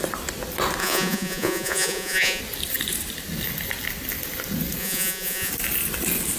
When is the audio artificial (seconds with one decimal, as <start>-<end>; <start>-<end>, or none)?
0.8-2.4; 4.8-5.5